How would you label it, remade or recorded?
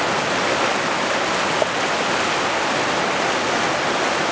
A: recorded